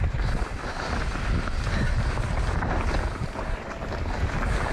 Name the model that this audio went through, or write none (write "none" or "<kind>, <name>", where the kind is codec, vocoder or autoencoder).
none